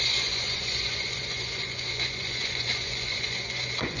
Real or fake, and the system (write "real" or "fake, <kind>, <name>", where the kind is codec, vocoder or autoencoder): fake, vocoder, Vocos